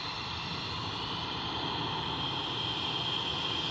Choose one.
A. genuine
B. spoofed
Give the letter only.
A